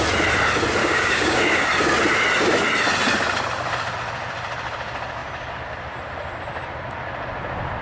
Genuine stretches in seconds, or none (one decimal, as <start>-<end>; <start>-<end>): 0.0-0.8; 1.7-7.8